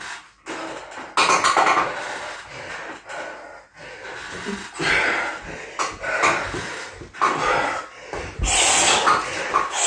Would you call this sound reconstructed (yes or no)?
no